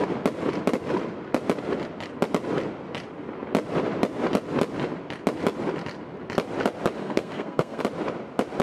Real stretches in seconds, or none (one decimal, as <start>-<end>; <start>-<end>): 0.0-7.0; 7.8-8.6